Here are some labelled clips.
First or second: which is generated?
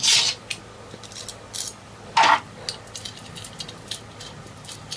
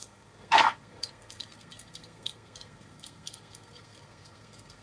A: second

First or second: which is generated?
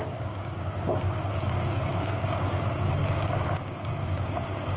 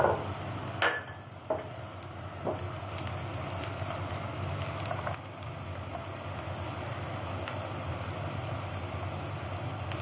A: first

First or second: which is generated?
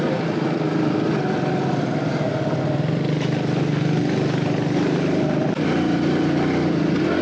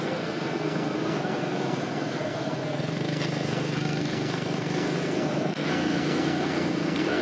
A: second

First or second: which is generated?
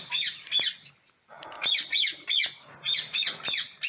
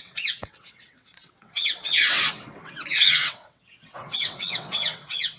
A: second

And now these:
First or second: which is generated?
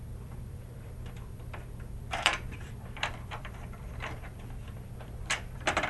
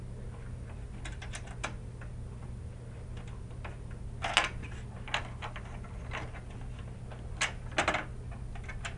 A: first